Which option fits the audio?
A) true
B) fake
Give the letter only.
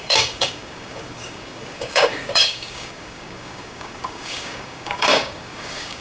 B